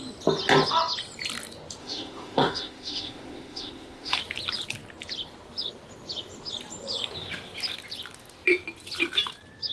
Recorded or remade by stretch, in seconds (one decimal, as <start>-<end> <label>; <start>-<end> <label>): 0.0-1.8 recorded; 1.8-4.2 remade; 4.2-9.7 recorded